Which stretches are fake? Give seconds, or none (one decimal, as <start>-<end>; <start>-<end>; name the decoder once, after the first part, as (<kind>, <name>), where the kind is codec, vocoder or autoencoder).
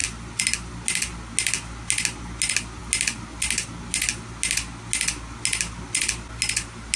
none